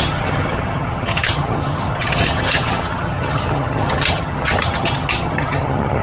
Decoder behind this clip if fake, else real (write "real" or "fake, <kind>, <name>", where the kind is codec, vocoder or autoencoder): fake, vocoder, HiFi-GAN